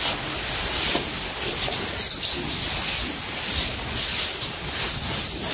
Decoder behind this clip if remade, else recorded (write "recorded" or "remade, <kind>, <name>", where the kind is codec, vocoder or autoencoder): recorded